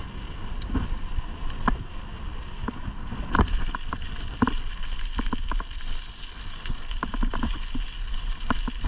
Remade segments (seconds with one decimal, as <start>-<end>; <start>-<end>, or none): 0.0-3.9